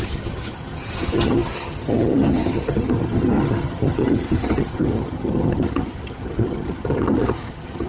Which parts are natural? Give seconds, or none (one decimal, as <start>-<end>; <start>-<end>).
none